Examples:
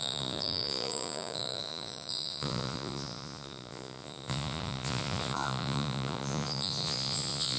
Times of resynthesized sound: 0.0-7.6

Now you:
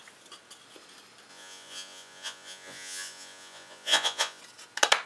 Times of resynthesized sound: 1.3-4.4

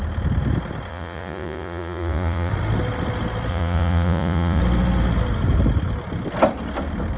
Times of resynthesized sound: 0.9-2.5; 3.5-4.6